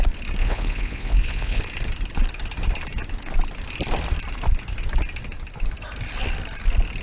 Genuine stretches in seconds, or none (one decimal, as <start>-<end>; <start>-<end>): 0.0-0.4; 1.6-7.0